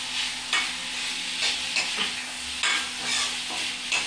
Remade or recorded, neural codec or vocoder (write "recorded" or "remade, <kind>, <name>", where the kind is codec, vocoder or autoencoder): recorded